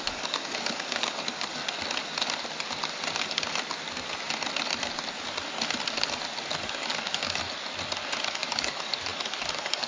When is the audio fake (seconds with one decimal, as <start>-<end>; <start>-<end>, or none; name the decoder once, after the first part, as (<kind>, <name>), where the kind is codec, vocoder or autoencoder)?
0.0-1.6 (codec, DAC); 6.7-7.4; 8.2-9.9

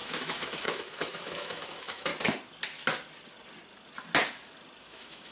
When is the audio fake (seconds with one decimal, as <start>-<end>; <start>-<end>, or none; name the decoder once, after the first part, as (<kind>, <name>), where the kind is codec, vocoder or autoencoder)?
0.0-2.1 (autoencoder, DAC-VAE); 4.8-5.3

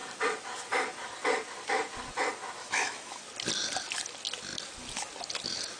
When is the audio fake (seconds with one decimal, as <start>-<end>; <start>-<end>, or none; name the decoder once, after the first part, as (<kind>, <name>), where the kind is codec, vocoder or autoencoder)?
2.6-3.2 (autoencoder, DAC-VAE)